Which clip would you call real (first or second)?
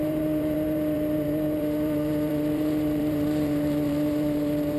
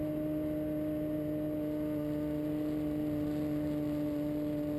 second